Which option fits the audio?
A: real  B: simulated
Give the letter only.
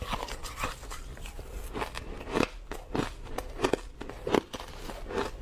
A